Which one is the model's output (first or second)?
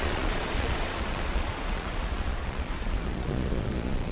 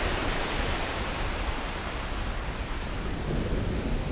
first